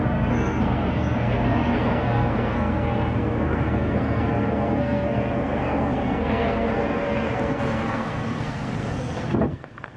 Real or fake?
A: fake